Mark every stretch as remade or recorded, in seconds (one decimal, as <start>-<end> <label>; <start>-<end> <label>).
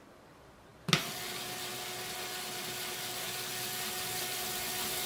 0.0-5.1 recorded